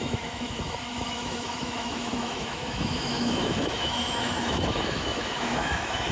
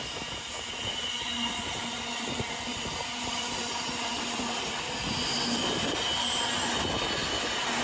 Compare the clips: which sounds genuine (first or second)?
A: second